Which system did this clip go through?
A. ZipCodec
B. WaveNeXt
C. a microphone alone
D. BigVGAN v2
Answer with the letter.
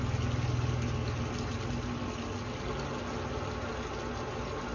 C